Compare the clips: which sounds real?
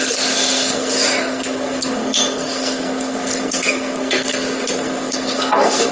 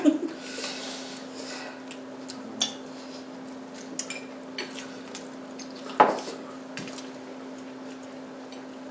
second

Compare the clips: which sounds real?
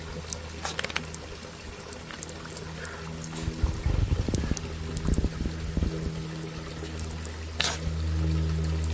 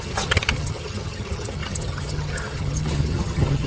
first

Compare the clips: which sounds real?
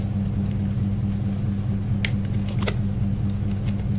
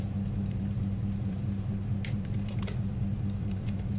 first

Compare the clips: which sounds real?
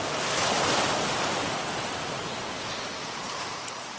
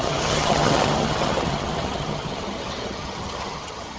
first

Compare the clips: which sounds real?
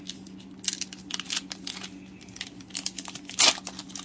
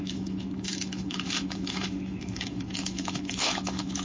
first